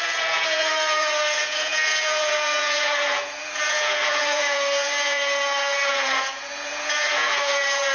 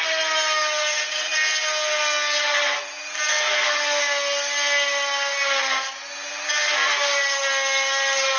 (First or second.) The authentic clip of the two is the second